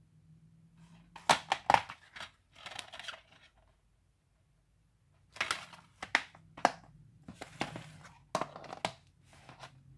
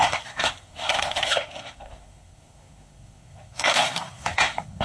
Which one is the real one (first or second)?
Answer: first